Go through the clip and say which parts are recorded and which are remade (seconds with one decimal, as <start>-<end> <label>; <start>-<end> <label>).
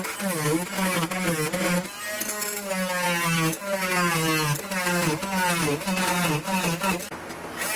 0.0-7.8 recorded